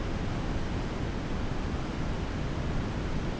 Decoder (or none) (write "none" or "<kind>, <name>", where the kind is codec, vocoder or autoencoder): none